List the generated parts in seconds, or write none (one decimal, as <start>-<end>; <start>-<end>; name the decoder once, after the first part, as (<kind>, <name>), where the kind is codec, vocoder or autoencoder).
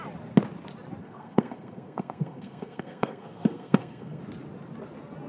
1.0-4.2 (codec, SNAC)